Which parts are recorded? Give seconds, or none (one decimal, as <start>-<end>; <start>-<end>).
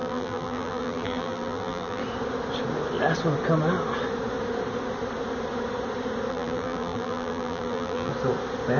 2.0-6.3; 8.1-8.8